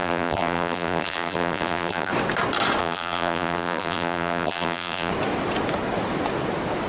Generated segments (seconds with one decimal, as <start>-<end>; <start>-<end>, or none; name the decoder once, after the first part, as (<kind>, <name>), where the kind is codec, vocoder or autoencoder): 0.0-2.1 (vocoder, BigVGAN v2); 2.8-5.1